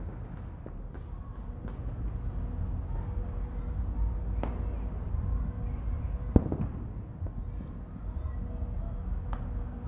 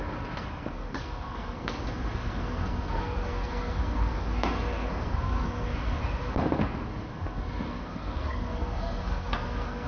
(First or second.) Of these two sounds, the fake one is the second